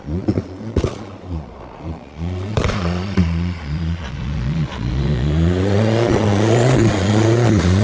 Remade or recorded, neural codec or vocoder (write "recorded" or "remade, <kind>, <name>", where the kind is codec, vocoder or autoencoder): remade, vocoder, Vocos